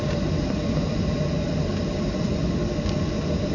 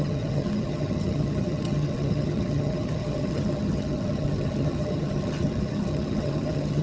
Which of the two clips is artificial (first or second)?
second